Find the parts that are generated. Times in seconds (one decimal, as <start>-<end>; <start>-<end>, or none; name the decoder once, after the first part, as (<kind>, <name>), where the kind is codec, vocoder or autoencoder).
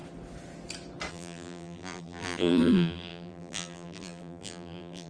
1.1-5.1 (vocoder, BigVGAN v2)